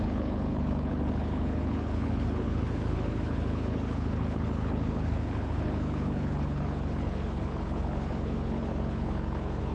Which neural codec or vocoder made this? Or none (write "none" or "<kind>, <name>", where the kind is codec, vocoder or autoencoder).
codec, HILCodec